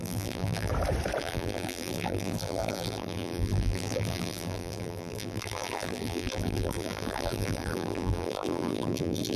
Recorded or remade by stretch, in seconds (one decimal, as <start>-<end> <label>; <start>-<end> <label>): 0.0-0.7 remade; 0.7-1.2 recorded; 1.2-9.4 remade